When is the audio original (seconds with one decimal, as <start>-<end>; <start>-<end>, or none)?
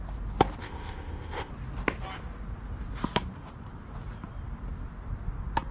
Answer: 0.0-0.6; 1.5-5.7